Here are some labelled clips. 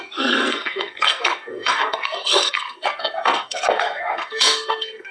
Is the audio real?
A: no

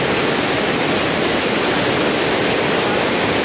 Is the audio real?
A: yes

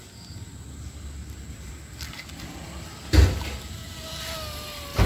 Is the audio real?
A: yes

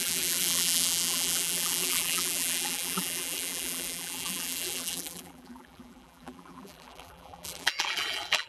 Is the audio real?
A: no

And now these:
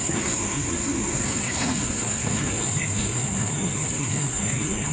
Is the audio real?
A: no